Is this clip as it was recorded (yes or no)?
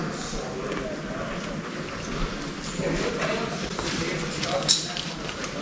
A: yes